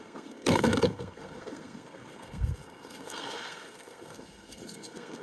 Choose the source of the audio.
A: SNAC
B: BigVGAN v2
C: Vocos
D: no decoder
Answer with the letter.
A